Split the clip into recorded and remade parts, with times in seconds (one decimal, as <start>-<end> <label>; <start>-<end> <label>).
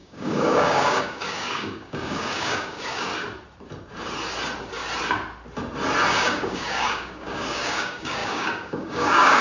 0.0-3.1 remade; 3.1-6.1 recorded; 6.1-9.4 remade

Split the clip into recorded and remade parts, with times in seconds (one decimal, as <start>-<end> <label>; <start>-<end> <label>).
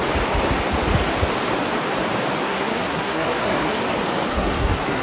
0.0-2.4 recorded; 2.4-3.8 remade; 3.8-4.3 recorded; 4.3-5.0 remade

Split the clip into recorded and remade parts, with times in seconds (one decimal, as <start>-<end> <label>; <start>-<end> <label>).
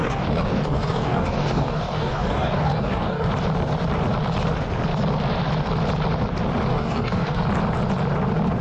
0.0-3.3 remade; 3.3-6.7 recorded; 6.7-7.4 remade; 7.4-8.6 recorded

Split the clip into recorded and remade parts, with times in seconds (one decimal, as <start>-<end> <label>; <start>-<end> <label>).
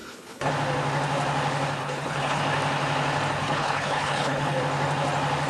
0.0-0.5 remade; 0.5-1.8 recorded; 1.8-2.4 remade; 2.4-3.4 recorded; 3.4-4.6 remade; 4.6-5.5 recorded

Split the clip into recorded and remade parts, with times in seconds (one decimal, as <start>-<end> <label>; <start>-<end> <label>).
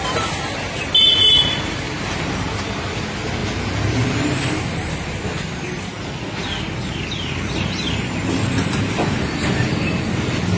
0.0-10.6 recorded